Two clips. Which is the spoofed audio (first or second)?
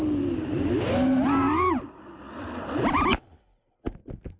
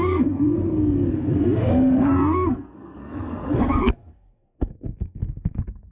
second